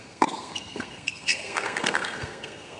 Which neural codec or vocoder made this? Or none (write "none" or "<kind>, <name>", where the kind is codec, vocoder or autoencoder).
codec, SNAC